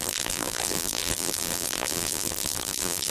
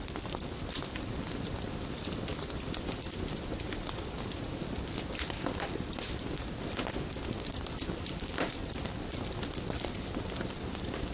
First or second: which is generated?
first